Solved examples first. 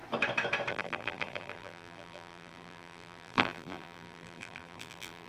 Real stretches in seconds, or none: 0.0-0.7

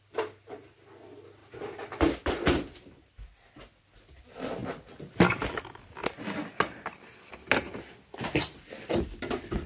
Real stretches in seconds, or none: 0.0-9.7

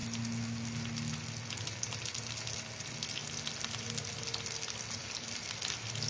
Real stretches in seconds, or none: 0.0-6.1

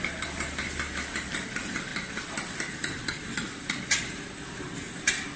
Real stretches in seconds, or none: 0.0-5.4